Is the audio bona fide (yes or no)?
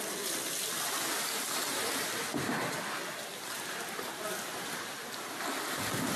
yes